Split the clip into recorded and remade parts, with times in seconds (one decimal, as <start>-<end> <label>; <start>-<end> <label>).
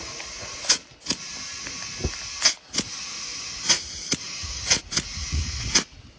0.0-0.8 remade; 0.8-2.9 recorded; 2.9-6.2 remade